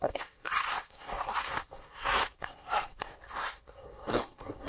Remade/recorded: remade